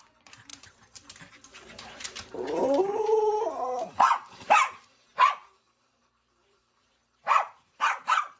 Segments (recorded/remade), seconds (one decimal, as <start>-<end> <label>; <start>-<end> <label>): 0.0-8.4 remade